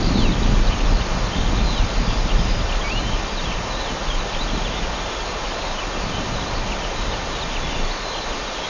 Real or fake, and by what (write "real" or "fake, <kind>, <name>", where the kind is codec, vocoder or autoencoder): real